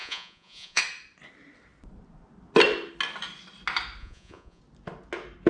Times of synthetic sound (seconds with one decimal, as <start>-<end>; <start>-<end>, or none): 0.0-0.8; 4.0-4.6